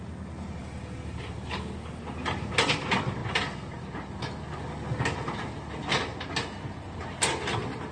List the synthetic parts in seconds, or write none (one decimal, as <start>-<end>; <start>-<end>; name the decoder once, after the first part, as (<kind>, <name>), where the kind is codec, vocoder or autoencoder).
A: 0.6-2.0 (codec, DAC)